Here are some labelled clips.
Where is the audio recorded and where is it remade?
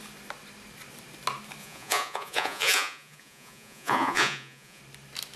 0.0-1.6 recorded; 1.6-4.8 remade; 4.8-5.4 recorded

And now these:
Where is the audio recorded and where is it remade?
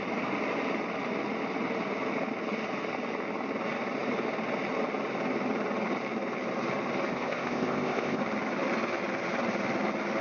0.0-7.1 recorded; 7.1-8.2 remade; 8.2-10.2 recorded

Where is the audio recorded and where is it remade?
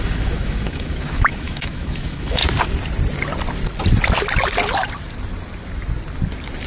0.0-2.4 remade; 2.4-6.7 recorded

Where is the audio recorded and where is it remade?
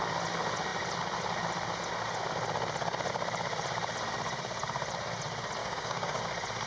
0.0-5.6 recorded; 5.6-6.2 remade; 6.2-6.7 recorded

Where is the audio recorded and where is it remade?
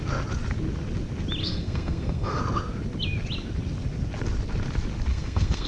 0.0-1.4 recorded; 1.4-2.4 remade; 2.4-5.1 recorded; 5.1-5.7 remade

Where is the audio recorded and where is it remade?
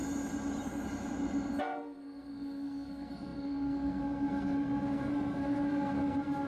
0.0-1.6 recorded; 1.6-6.5 remade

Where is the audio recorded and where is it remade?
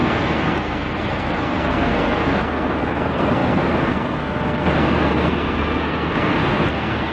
0.0-7.1 remade